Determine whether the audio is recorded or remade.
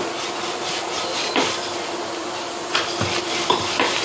recorded